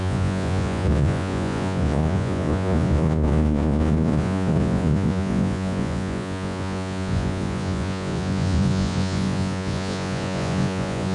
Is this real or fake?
fake